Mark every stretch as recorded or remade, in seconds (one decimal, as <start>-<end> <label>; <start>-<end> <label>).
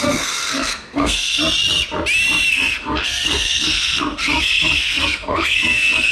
0.0-1.4 remade; 1.4-2.5 recorded; 2.5-6.1 remade